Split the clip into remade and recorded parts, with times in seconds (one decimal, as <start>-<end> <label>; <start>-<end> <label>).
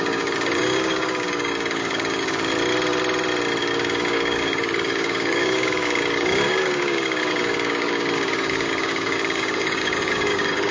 0.0-2.5 remade; 2.5-3.6 recorded; 3.6-10.7 remade